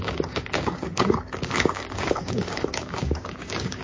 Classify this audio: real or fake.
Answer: fake